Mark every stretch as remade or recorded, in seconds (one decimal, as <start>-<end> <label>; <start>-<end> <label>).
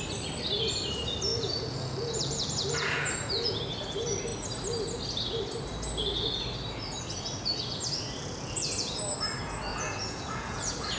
0.0-1.3 recorded; 1.3-3.6 remade; 3.6-9.7 recorded; 9.7-11.0 remade